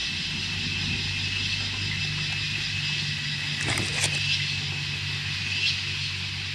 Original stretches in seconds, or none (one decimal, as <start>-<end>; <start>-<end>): 0.0-6.5